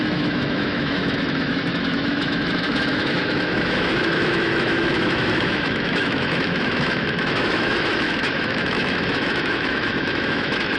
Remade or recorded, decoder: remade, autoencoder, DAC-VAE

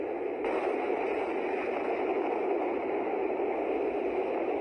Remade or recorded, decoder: recorded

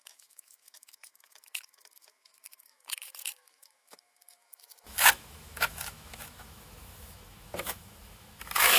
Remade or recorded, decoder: remade, autoencoder, DAC-VAE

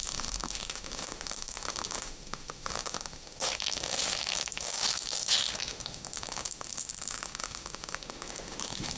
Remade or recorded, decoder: remade, autoencoder, DAC-VAE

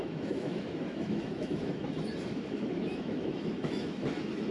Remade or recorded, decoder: remade, autoencoder, DAC-VAE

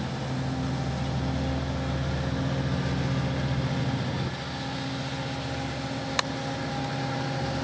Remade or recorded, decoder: recorded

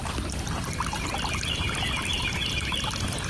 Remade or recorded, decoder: recorded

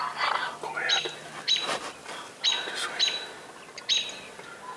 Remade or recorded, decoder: recorded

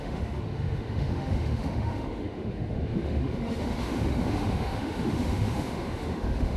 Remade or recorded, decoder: remade, autoencoder, DAC-VAE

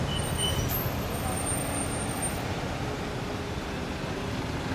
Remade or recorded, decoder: recorded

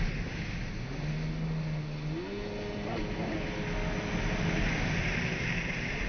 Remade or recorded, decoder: recorded